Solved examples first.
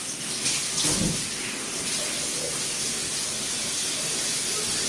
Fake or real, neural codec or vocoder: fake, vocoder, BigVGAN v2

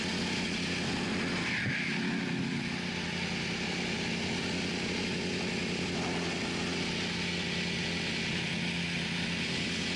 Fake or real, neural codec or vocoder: real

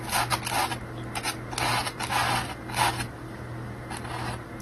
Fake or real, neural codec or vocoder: real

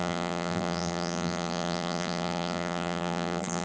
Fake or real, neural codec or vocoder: fake, vocoder, BigVGAN v2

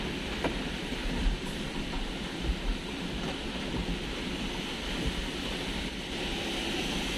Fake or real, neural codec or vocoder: fake, vocoder, BigVGAN v2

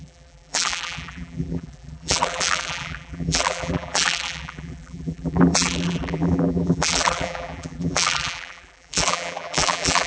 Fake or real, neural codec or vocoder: fake, vocoder, BigVGAN v2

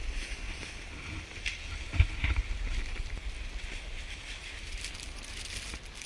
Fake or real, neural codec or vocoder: real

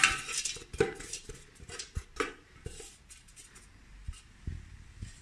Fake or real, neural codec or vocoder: real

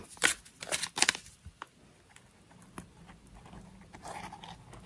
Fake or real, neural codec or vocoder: real